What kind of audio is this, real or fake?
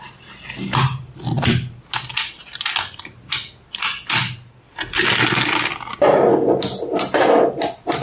real